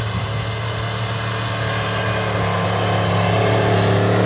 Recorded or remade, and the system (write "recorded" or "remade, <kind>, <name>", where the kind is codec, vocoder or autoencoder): recorded